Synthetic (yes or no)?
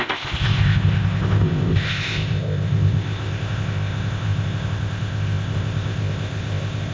yes